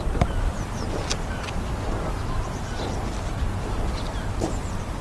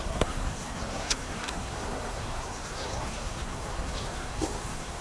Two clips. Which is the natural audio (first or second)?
first